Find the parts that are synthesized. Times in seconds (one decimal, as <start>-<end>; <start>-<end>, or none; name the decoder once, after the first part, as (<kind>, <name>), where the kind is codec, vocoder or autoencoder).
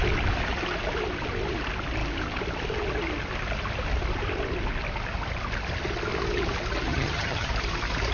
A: 6.9-7.5 (vocoder, HiFi-GAN)